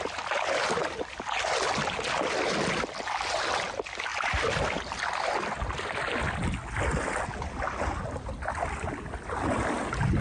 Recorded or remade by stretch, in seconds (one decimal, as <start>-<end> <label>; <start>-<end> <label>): 0.0-0.8 recorded; 0.8-1.5 remade; 1.5-4.1 recorded; 4.1-5.3 remade; 5.3-10.2 recorded